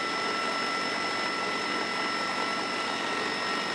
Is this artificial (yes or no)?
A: no